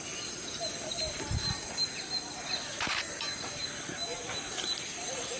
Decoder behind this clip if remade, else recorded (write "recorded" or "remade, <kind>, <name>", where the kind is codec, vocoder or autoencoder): recorded